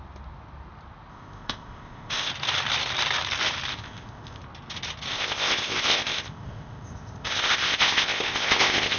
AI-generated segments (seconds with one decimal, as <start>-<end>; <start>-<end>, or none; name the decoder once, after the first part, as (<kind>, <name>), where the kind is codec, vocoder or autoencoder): 1.1-2.3 (codec, ZipCodec); 3.7-4.4; 5.1-9.0